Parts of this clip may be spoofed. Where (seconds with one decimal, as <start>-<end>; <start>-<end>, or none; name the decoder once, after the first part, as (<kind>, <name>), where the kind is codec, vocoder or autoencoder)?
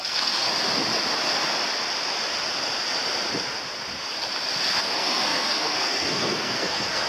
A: 0.0-0.5 (codec, SNAC); 4.8-7.1